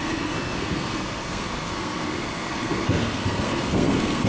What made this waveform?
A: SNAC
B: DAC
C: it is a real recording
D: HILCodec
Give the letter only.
A